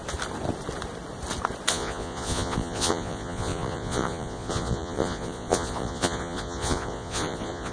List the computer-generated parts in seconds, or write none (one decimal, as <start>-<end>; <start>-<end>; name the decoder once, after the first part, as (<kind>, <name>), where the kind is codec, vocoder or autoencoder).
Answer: 1.7-7.7 (vocoder, Vocos)